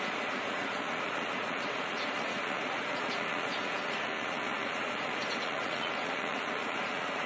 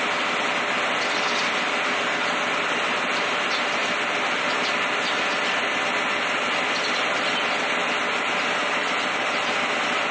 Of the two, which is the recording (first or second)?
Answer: second